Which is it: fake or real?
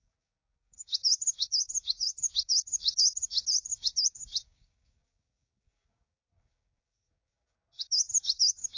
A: fake